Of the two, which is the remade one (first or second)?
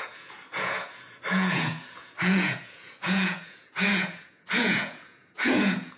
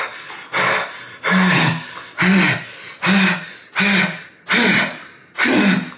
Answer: first